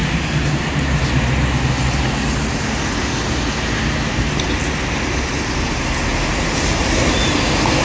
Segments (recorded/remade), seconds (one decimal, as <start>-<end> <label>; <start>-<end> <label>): 0.0-1.0 remade; 1.0-6.1 recorded; 6.1-6.8 remade; 6.8-7.8 recorded